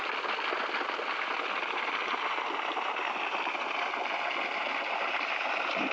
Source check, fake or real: real